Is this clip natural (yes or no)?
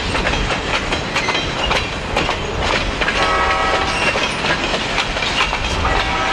yes